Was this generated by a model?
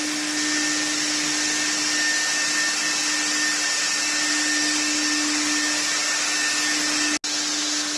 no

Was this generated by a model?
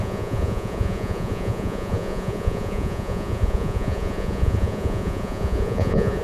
yes